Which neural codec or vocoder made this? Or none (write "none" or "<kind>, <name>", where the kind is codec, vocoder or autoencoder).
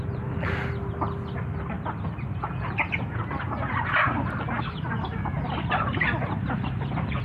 none